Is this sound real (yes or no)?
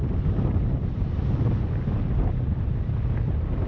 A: yes